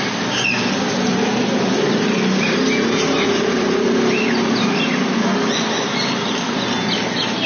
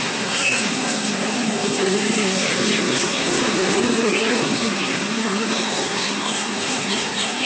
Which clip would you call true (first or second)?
first